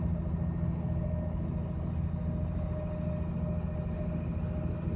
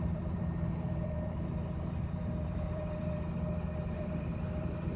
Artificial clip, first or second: second